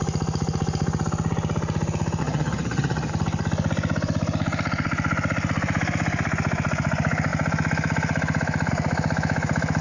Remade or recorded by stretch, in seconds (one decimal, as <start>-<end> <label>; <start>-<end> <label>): 0.0-2.2 recorded; 2.2-3.1 remade; 3.1-9.8 recorded